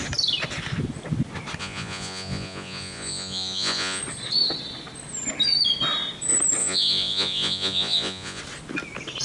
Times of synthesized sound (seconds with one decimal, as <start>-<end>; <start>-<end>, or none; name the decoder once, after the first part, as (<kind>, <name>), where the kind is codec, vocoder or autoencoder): 1.6-4.0 (vocoder, Vocos); 6.6-8.4